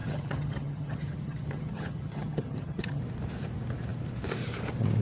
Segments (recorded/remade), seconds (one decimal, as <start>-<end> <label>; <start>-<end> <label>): 0.0-3.0 remade; 3.0-5.0 recorded